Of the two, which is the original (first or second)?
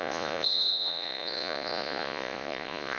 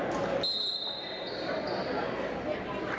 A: second